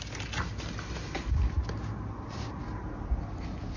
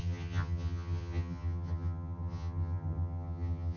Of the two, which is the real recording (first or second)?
first